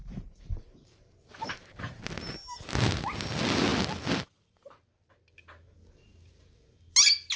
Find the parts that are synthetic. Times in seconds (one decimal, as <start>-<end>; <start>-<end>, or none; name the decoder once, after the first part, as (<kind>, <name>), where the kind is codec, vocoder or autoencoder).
0.0-2.0 (vocoder, BigVGAN v2)